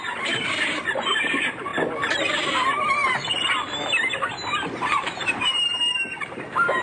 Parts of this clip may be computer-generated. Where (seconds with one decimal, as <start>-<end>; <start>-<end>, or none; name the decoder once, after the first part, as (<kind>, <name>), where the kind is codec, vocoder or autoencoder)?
0.0-1.7 (vocoder, BigVGAN v2); 2.2-3.0; 4.0-6.8